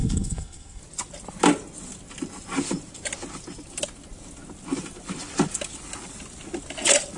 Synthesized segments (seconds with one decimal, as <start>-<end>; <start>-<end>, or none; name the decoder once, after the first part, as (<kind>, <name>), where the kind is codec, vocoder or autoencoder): 0.0-0.8 (codec, SNAC)